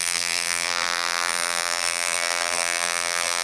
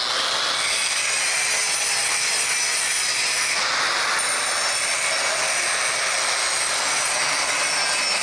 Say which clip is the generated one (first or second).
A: first